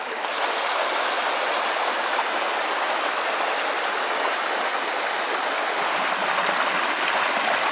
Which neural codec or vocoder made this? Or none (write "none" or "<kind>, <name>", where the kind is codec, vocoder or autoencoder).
none